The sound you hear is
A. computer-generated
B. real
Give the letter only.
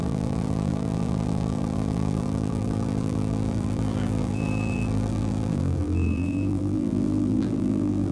A